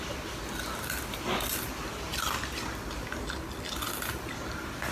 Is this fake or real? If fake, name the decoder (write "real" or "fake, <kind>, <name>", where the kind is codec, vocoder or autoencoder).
real